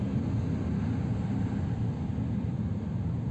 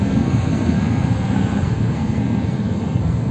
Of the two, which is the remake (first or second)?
second